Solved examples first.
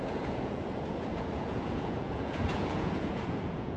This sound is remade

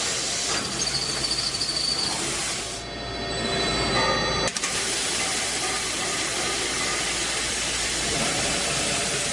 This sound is recorded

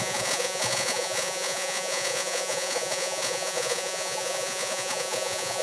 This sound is remade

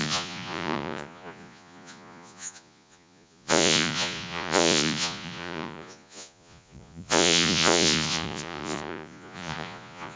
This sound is remade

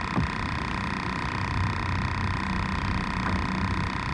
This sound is recorded